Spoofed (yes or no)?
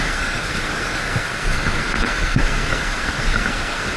yes